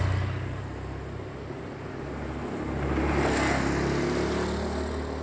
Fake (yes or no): no